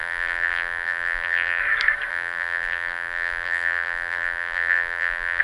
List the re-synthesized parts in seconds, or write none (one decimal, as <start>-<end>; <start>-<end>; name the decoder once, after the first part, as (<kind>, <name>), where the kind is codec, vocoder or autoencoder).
0.0-1.6 (vocoder, BigVGAN v2); 2.1-5.4